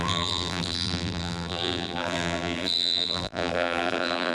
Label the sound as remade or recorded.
remade